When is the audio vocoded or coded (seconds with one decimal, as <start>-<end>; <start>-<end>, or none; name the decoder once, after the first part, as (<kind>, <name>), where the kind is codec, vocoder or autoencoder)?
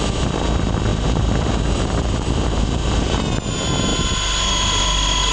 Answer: 0.9-3.2 (vocoder, BigVGAN v2)